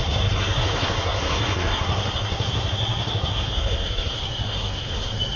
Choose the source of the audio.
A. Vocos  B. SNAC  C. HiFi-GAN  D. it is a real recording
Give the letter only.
B